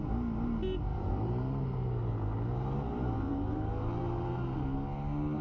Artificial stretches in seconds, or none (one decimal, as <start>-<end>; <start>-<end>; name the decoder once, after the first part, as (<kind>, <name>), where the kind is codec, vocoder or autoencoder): 0.9-2.1 (vocoder, BigVGAN v2); 3.3-4.0